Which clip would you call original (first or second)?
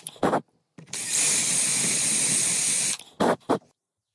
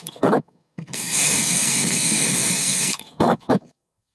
first